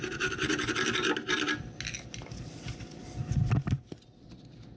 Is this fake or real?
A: real